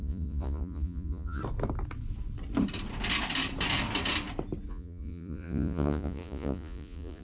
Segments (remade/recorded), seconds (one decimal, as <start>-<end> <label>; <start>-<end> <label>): 0.0-1.4 remade; 1.4-4.7 recorded; 4.7-7.2 remade